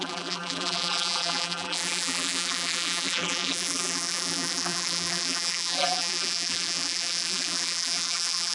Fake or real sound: fake